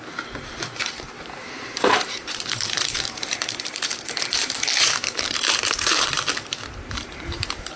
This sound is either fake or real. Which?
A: fake